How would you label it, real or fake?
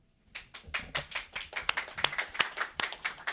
real